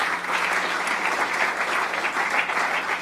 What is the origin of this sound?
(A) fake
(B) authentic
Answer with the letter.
B